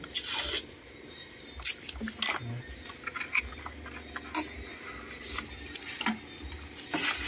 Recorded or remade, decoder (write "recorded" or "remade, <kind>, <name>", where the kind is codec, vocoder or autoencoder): recorded